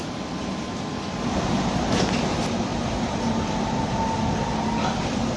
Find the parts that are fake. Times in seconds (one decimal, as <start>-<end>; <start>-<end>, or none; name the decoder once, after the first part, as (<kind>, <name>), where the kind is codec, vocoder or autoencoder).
none